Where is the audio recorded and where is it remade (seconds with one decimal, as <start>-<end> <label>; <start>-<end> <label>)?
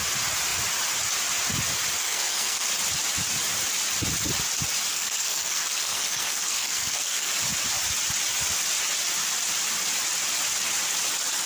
0.0-2.0 recorded; 2.0-2.7 remade; 2.7-4.9 recorded; 4.9-7.3 remade; 7.3-11.5 recorded